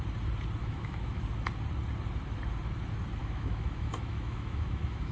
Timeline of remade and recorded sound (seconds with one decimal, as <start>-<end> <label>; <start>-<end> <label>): 0.0-0.6 recorded; 0.6-1.2 remade; 1.2-3.2 recorded; 3.2-5.1 remade